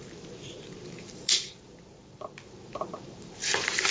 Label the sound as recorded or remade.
remade